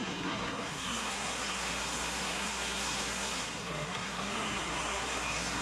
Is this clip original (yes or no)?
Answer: no